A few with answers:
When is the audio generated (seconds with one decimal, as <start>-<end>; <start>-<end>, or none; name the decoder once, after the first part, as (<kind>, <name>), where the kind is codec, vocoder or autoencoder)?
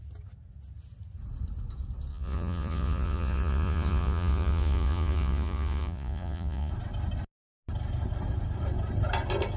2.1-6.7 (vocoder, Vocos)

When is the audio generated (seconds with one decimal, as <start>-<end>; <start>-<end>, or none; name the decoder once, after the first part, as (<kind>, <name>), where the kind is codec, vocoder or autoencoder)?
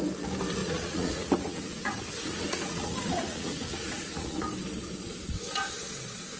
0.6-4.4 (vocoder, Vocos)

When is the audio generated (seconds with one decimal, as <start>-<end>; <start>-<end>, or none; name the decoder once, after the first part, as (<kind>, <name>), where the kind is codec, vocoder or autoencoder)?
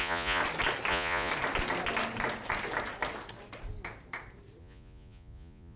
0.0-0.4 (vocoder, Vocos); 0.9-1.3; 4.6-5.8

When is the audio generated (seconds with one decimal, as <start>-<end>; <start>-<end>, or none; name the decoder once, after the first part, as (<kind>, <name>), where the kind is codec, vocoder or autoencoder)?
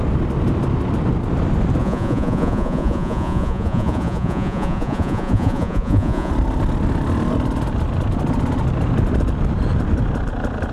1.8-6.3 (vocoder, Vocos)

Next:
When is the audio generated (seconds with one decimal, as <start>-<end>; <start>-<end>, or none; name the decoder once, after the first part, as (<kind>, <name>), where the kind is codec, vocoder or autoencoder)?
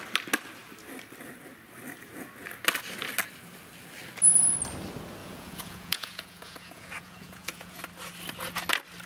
5.2-7.8 (vocoder, Vocos)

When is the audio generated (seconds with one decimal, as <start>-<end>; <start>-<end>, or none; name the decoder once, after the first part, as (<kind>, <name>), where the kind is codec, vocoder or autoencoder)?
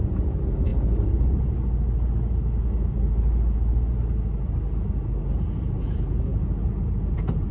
0.0-0.7 (vocoder, Vocos); 5.2-6.3; 6.9-7.5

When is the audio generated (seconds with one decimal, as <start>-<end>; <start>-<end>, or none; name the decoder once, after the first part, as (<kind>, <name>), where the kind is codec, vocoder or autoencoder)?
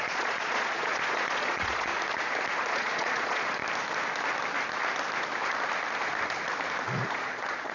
0.0-1.9 (vocoder, Vocos); 2.5-3.6; 7.1-7.7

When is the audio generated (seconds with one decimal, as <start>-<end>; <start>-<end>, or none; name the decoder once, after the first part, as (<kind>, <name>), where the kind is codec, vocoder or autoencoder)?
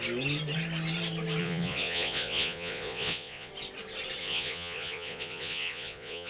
1.4-3.5 (vocoder, Vocos); 4.2-6.3